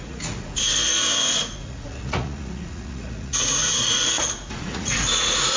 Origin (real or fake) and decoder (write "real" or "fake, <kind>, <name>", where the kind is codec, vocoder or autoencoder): fake, vocoder, Vocos